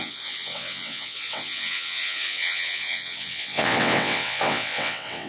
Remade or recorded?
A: remade